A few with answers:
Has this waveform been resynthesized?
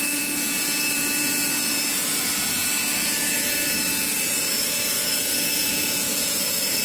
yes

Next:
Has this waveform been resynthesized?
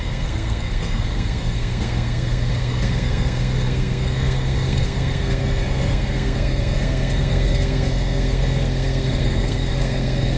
yes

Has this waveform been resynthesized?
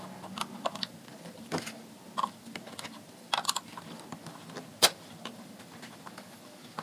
no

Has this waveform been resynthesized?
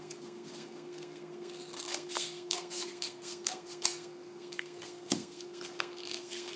yes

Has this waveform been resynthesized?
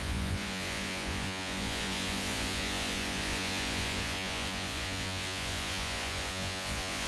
yes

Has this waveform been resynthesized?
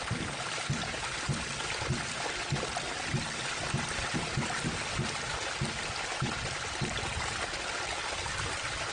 yes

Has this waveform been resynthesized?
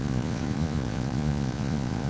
yes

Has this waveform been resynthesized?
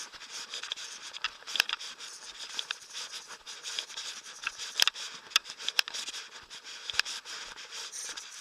yes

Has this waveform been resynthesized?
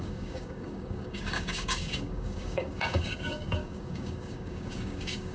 yes